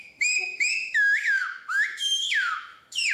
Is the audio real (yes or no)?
no